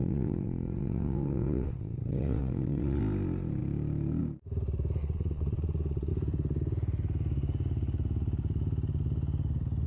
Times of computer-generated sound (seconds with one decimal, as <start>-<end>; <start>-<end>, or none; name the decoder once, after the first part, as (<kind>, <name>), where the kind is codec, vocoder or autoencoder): 0.0-3.0 (vocoder, WaveNeXt); 5.0-6.1